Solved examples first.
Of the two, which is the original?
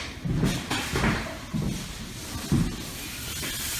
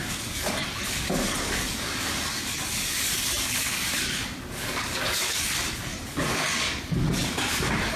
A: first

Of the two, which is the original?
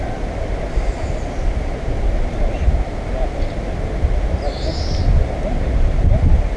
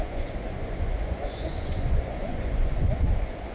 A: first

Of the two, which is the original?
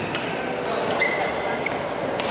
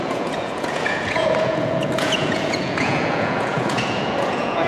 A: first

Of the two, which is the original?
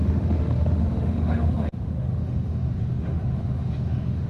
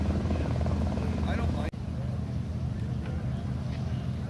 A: second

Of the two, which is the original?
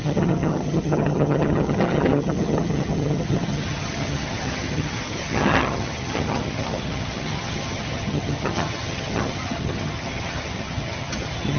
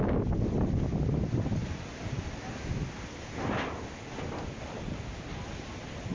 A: second